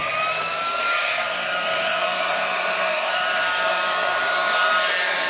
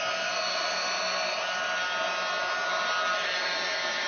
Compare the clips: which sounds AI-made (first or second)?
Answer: first